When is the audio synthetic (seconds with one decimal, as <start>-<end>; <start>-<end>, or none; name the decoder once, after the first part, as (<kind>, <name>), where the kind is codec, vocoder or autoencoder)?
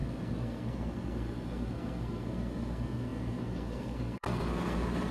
0.0-5.1 (codec, SNAC)